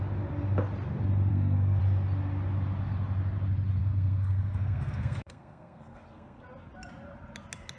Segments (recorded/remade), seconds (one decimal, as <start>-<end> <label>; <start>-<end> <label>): 0.0-1.3 recorded; 1.3-1.8 remade; 1.8-3.8 recorded; 3.8-6.4 remade; 6.4-7.8 recorded